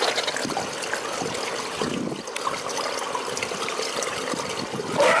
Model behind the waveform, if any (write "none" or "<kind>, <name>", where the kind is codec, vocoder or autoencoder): none